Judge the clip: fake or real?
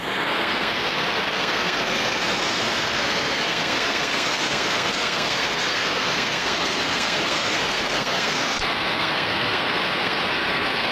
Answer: fake